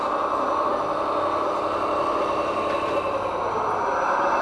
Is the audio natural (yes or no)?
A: yes